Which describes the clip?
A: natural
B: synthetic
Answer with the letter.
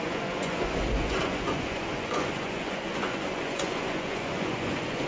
B